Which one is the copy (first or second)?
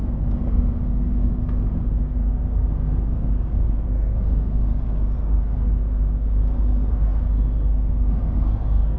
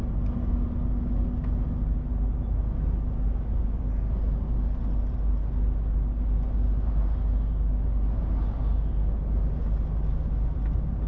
first